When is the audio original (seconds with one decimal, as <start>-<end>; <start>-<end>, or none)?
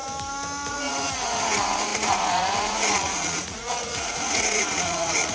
0.0-0.7